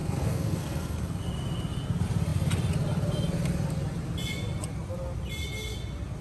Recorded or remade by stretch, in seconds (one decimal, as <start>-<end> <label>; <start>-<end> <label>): 0.0-1.2 remade; 1.2-6.2 recorded